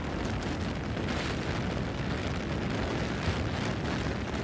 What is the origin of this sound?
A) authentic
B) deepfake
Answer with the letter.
A